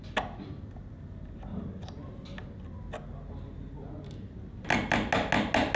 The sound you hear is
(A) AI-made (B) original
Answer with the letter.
B